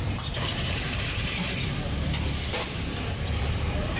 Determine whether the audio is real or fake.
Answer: real